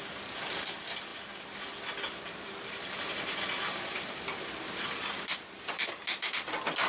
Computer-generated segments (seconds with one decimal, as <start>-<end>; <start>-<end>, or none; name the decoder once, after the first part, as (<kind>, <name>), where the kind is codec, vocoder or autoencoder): 2.1-5.9 (vocoder, BigVGAN v2)